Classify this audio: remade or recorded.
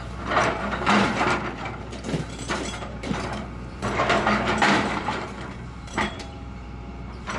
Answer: remade